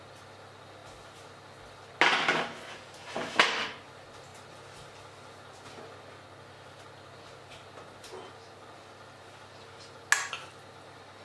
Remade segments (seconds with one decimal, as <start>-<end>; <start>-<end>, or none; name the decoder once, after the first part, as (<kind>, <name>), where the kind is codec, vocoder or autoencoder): none